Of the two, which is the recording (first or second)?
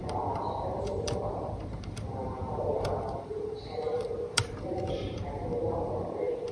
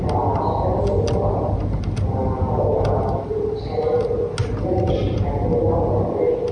second